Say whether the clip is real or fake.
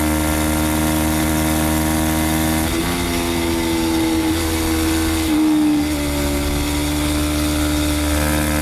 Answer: real